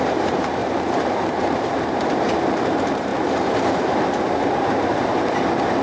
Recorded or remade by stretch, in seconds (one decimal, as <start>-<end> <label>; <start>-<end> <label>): 0.0-3.1 remade; 3.1-5.8 recorded